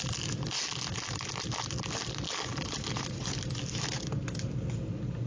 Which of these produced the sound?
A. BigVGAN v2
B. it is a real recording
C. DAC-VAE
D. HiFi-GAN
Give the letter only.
B